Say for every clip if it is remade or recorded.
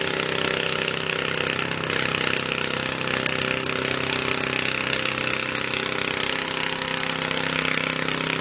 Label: recorded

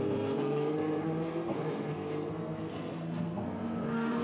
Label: remade